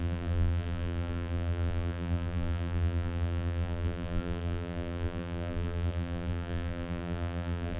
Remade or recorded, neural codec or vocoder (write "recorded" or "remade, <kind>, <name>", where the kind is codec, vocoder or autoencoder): remade, vocoder, BigVGAN v2